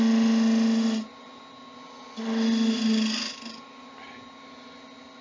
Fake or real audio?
real